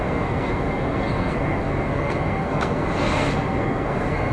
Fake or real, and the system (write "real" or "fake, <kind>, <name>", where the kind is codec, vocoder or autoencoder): fake, codec, SNAC